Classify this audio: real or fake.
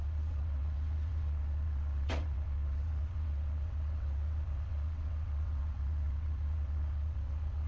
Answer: fake